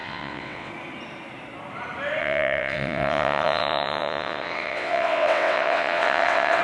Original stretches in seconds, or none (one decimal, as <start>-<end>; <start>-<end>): 0.7-2.2

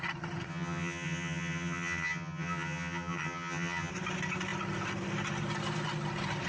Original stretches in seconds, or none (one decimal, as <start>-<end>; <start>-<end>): 0.0-0.5; 3.9-6.5